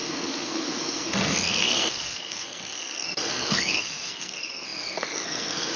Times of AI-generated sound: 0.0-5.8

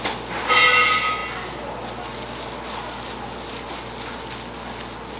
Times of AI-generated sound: none

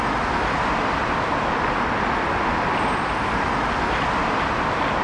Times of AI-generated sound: none

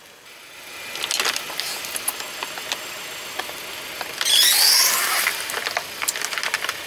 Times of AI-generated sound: none

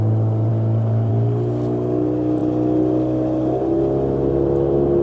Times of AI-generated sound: none

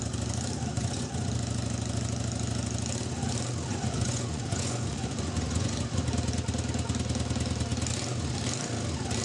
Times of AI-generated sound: 0.7-1.3; 3.7-5.8

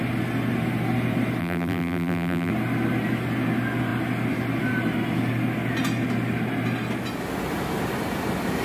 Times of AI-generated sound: 1.4-2.5

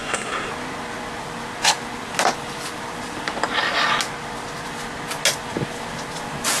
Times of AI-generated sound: 0.0-0.5